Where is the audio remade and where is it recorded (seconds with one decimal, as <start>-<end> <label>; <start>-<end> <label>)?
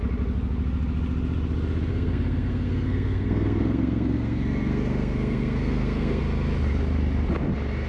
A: 0.0-1.9 recorded; 1.9-6.2 remade; 6.2-7.9 recorded